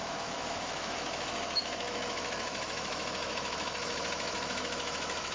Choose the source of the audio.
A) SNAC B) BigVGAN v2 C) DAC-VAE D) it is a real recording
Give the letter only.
C